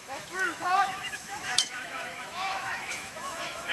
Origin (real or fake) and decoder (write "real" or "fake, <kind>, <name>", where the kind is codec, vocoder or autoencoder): fake, autoencoder, DAC-VAE